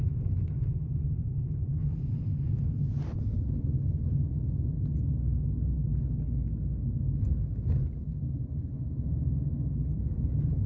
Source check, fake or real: real